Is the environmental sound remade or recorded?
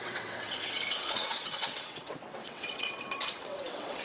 remade